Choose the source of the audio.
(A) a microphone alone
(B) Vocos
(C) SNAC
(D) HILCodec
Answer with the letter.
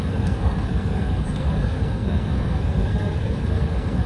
C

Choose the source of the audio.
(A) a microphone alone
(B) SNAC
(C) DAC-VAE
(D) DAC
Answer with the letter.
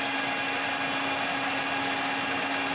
A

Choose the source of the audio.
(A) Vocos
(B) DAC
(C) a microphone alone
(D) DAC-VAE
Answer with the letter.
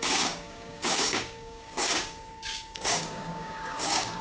B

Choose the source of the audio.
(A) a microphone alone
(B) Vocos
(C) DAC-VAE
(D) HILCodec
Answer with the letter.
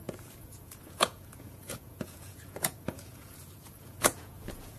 B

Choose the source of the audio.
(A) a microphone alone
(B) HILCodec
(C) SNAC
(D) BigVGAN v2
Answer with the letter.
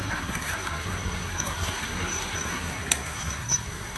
C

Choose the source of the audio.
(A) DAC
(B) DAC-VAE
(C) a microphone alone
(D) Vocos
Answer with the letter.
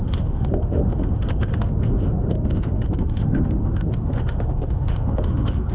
B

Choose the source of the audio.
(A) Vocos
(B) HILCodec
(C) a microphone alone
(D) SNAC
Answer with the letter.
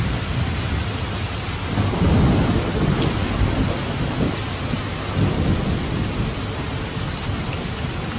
C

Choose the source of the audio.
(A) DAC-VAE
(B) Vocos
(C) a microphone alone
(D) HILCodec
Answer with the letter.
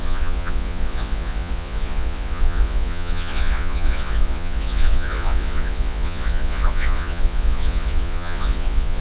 B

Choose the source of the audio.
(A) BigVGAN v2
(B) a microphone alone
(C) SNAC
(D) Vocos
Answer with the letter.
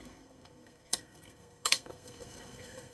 C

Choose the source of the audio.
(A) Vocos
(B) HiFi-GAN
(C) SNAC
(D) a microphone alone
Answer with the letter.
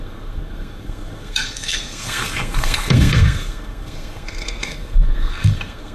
C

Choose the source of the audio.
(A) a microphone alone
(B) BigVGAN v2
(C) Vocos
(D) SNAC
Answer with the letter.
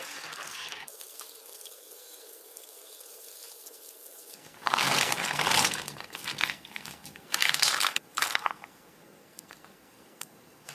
D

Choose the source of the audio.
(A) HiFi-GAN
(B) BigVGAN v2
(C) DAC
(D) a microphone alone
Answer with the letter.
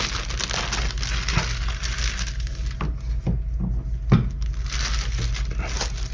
D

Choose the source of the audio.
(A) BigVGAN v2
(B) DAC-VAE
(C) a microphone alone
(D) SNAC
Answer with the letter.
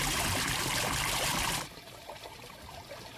A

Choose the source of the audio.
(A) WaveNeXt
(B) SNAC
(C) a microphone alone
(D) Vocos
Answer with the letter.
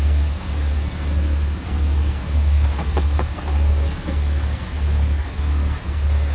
B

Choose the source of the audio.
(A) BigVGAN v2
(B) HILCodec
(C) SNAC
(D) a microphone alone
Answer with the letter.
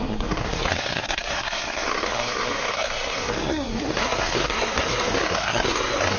C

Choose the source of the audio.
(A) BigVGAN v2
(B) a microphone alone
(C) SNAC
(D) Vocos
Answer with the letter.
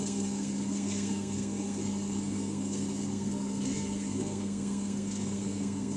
C